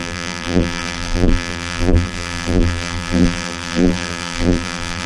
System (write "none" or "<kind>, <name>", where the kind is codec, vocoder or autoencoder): vocoder, BigVGAN v2